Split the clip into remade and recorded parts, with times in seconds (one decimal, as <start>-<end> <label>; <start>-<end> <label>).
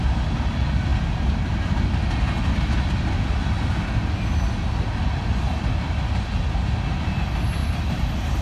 0.0-0.9 recorded; 0.9-1.7 remade; 1.7-7.6 recorded; 7.6-8.4 remade